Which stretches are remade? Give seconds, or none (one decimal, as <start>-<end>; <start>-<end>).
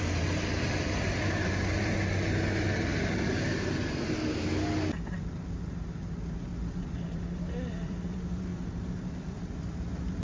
0.0-2.9; 6.6-8.5; 9.1-10.2